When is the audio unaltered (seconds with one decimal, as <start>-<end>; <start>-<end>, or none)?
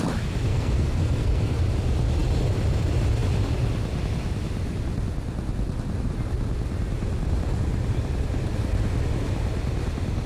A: 0.0-0.5; 1.6-10.3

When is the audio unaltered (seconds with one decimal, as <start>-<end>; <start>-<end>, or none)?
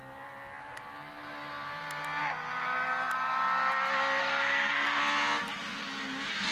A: 0.0-4.2; 5.0-6.5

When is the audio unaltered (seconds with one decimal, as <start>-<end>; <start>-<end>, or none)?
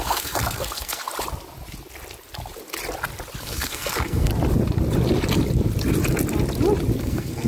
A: 1.1-3.4; 4.3-7.0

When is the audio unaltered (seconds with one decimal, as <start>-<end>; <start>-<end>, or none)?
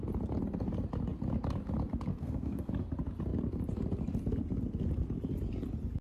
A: 0.0-2.1; 2.7-6.0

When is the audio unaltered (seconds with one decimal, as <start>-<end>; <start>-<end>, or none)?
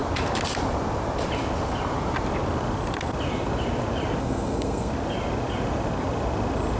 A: 0.0-4.2; 4.9-6.8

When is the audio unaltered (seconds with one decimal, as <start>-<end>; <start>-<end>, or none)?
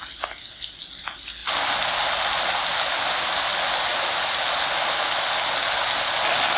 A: 0.0-6.6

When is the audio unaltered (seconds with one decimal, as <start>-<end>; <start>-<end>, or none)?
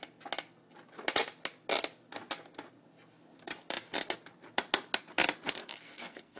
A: 0.0-5.6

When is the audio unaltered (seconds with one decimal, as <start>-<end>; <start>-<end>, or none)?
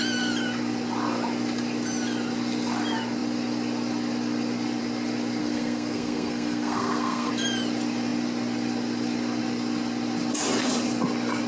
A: 0.0-5.4; 7.3-11.5